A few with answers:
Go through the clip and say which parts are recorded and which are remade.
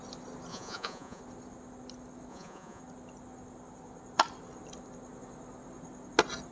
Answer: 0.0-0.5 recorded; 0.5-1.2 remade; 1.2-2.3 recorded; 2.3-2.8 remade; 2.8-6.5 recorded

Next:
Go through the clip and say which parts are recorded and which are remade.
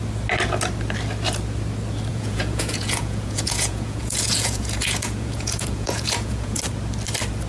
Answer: 0.0-2.1 recorded; 2.1-6.6 remade; 6.6-7.5 recorded